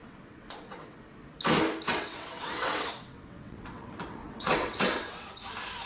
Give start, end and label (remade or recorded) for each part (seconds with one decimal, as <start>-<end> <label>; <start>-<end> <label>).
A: 0.0-1.0 remade; 1.0-1.9 recorded; 1.9-5.4 remade; 5.4-5.9 recorded